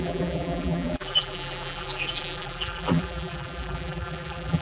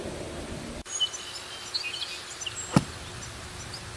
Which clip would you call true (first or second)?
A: second